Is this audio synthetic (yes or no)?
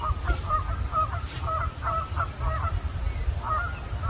no